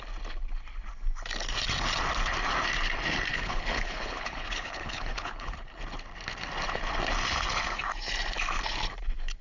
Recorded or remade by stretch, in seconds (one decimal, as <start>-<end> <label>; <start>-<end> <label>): 0.0-3.3 recorded; 3.3-5.8 remade; 5.8-9.4 recorded